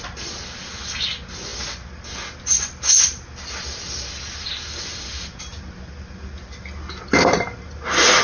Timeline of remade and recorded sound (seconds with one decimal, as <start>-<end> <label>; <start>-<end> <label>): 0.0-8.2 recorded

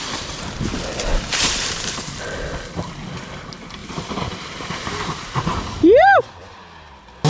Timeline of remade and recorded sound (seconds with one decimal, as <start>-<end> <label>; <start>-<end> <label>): 0.0-1.1 recorded; 1.1-2.2 remade; 2.2-3.8 recorded; 3.8-6.2 remade; 6.2-7.3 recorded

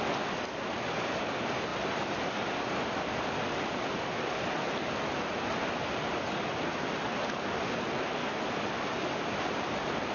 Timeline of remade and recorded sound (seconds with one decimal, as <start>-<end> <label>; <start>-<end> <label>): 0.0-10.1 recorded

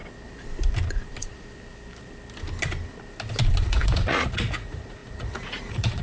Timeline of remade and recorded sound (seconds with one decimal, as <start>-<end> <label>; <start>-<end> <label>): 0.0-3.6 recorded; 3.6-6.0 remade

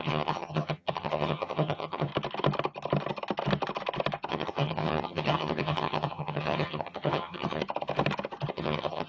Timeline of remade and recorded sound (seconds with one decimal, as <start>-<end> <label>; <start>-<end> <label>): 0.0-2.1 remade; 2.1-4.3 recorded; 4.3-7.6 remade; 7.6-8.5 recorded; 8.5-9.1 remade

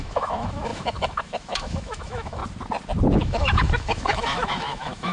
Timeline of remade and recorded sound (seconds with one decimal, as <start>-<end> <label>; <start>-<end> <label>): 0.0-2.4 remade; 2.4-3.2 recorded; 3.2-5.1 remade

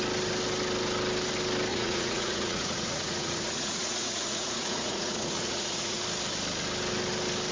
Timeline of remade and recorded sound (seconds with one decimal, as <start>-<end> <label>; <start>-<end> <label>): 0.0-1.7 recorded; 1.7-6.0 remade; 6.0-7.5 recorded